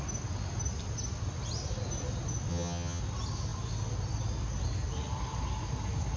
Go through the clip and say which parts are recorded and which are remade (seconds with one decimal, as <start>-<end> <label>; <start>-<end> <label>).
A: 0.0-2.5 recorded; 2.5-3.0 remade; 3.0-6.2 recorded